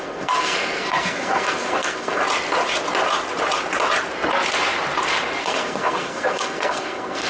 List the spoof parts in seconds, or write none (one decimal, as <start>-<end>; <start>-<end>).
0.0-2.2; 5.4-7.3